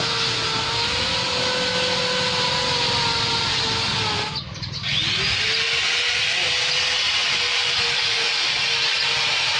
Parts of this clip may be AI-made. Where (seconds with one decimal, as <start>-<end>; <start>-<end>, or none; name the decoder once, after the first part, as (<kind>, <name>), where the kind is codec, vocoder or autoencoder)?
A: 7.2-8.3 (vocoder, BigVGAN v2)